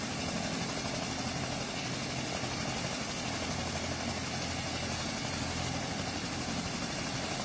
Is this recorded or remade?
recorded